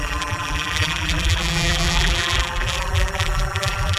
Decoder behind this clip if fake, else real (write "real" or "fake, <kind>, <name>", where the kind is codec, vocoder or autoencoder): fake, vocoder, BigVGAN v2